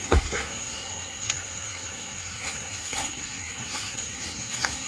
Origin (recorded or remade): remade